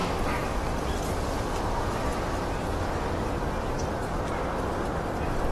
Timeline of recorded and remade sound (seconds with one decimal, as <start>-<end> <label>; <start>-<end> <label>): 0.0-5.5 recorded